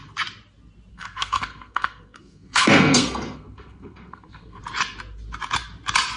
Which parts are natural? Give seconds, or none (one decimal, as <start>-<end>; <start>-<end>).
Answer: 0.0-0.9; 4.6-6.2

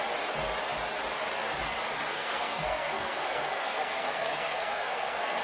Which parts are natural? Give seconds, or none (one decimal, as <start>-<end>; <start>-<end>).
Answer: 0.0-2.1

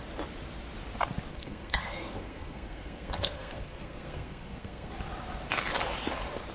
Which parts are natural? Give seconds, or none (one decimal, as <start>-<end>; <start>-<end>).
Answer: 0.0-1.3; 4.9-6.5